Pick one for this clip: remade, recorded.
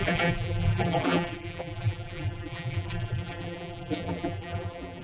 remade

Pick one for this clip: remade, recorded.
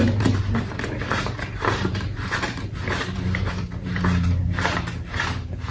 remade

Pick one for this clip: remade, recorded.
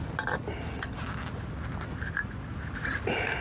recorded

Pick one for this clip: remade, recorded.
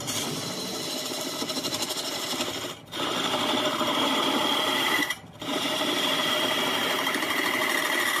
remade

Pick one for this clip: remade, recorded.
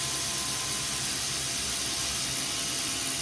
recorded